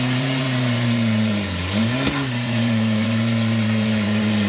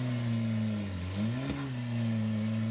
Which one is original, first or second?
second